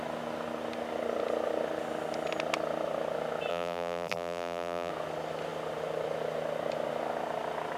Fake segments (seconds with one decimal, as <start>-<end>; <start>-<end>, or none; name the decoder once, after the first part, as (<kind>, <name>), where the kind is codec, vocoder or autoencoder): 3.5-4.9 (vocoder, BigVGAN v2)